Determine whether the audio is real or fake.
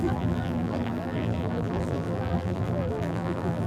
fake